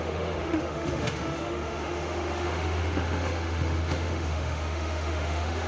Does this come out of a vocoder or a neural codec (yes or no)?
yes